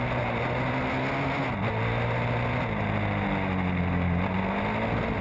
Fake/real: real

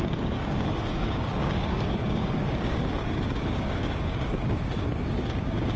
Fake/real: fake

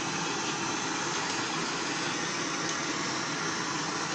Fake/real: real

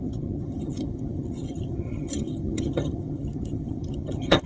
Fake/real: fake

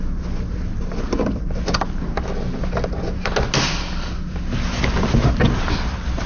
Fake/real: real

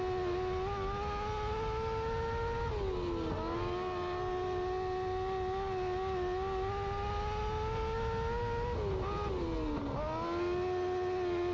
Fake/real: real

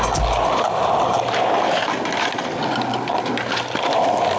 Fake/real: real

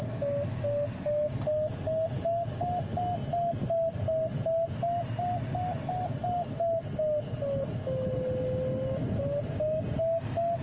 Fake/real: real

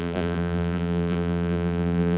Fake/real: fake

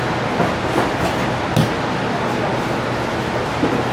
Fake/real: real